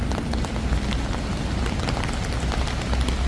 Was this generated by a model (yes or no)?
no